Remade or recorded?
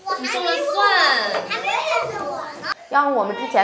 recorded